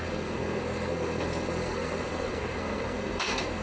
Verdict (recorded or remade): remade